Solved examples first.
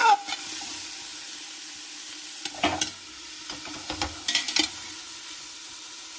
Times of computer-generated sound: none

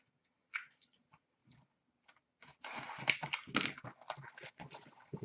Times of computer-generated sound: 0.0-1.4 (vocoder, Vocos); 4.5-5.2

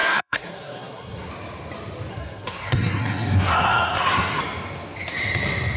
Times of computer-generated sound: 0.0-1.3 (codec, SNAC); 2.1-4.4

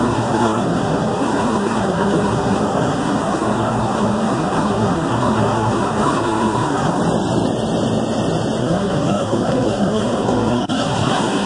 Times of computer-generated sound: 0.0-7.0 (codec, SNAC); 8.6-11.5

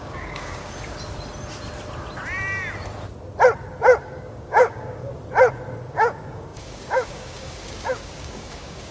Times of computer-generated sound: 0.0-0.6 (codec, DAC); 4.0-5.1; 5.8-8.9

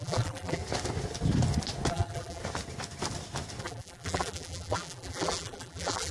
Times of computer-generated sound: 0.0-0.6 (vocoder, BigVGAN v2); 1.9-2.4; 3.6-6.1